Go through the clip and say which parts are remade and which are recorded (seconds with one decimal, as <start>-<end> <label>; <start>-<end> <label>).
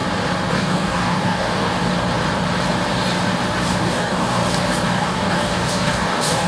0.0-0.5 recorded; 0.5-1.9 remade; 1.9-3.8 recorded; 3.8-4.4 remade; 4.4-4.9 recorded; 4.9-6.5 remade